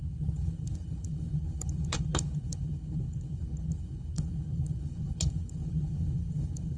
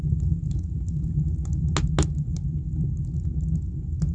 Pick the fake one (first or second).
first